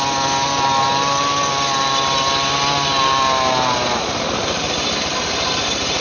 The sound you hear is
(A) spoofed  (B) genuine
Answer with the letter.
B